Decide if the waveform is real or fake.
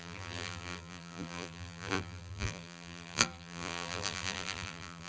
fake